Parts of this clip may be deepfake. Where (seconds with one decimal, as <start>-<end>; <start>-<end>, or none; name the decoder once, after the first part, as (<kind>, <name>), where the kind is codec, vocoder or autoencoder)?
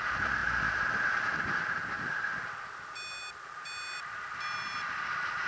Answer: none